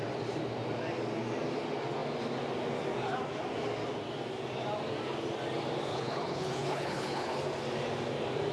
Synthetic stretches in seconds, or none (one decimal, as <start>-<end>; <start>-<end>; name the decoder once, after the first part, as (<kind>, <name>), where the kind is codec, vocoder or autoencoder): 5.9-7.4 (codec, HILCodec)